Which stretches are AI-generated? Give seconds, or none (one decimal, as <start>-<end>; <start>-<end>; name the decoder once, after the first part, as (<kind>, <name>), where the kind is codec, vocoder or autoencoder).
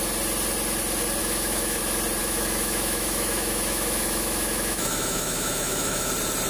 1.2-1.8 (autoencoder, DAC-VAE); 2.2-6.1